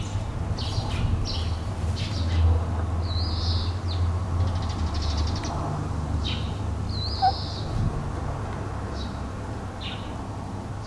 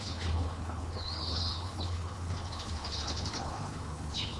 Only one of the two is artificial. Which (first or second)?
second